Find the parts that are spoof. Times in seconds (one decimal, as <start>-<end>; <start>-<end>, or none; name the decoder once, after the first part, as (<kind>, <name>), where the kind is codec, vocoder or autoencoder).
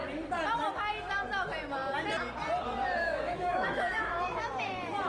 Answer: 3.0-4.6 (autoencoder, DAC-VAE)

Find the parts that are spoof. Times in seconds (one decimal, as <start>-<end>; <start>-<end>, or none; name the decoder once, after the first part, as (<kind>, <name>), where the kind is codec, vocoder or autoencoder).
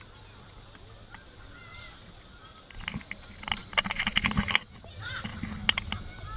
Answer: none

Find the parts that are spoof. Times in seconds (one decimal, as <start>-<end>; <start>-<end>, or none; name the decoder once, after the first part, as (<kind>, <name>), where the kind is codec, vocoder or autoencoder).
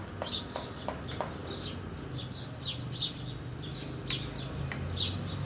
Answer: none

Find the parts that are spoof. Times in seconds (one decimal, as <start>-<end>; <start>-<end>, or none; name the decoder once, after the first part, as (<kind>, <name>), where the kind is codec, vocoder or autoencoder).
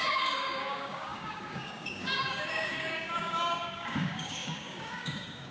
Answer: 0.0-5.5 (codec, DAC)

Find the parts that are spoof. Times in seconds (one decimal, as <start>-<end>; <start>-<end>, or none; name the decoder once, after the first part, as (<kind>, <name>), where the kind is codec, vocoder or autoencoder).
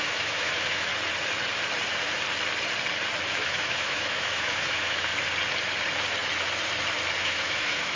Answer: 0.0-0.9 (autoencoder, DAC-VAE); 3.3-5.1; 7.2-8.0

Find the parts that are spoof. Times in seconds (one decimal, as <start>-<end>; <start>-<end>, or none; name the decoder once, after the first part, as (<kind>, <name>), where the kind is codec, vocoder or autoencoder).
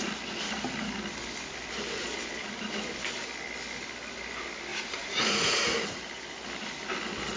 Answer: 4.7-6.0 (vocoder, Vocos)